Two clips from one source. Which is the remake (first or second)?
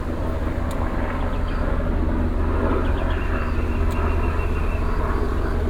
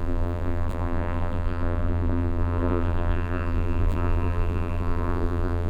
second